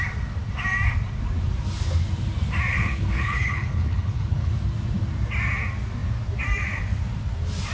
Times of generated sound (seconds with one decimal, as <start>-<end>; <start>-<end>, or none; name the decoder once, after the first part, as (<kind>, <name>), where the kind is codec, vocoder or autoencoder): 2.7-4.5 (codec, HILCodec)

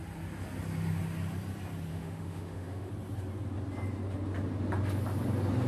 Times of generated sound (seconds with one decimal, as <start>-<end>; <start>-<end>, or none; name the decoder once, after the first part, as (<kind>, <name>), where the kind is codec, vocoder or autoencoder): 1.9-2.9 (autoencoder, DAC-VAE)

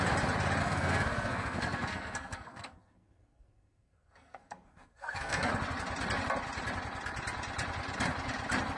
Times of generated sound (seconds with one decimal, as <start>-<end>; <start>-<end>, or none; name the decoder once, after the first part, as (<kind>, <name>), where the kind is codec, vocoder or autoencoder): 0.6-5.5 (codec, SNAC)

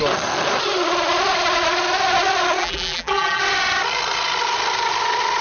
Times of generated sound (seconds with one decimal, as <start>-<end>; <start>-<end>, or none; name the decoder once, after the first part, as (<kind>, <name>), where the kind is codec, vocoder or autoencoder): 2.6-3.4 (vocoder, BigVGAN v2)

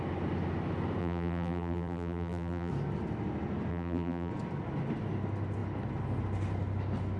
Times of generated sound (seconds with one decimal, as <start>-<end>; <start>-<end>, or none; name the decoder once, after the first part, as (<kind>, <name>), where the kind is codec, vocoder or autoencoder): 1.0-2.7 (vocoder, BigVGAN v2); 3.7-4.3

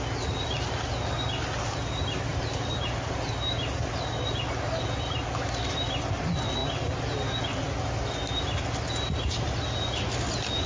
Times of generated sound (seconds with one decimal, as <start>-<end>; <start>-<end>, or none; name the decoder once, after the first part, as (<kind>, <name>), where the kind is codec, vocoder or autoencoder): none

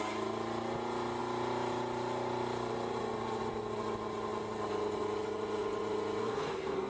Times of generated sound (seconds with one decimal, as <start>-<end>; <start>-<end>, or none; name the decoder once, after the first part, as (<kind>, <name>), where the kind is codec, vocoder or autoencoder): 6.2-6.9 (codec, SNAC)